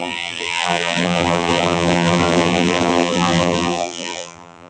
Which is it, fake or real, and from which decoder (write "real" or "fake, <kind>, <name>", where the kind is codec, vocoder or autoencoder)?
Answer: fake, vocoder, BigVGAN v2